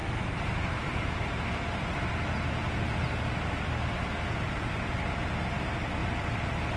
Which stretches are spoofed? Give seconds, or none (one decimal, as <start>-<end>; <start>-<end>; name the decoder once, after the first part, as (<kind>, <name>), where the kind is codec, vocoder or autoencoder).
0.0-1.0 (vocoder, BigVGAN v2); 6.0-6.8